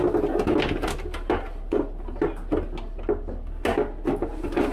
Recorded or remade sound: recorded